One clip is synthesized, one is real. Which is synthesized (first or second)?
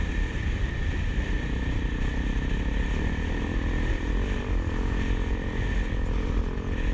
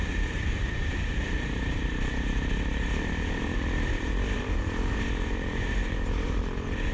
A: second